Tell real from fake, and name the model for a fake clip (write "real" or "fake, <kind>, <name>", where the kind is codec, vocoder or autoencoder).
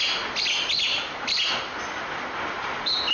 real